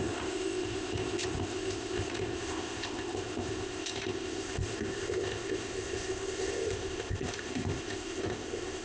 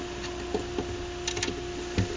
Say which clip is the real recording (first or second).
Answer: second